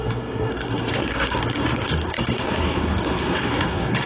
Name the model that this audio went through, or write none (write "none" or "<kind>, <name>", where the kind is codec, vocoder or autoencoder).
codec, SNAC